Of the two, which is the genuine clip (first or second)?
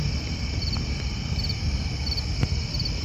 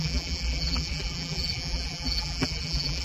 first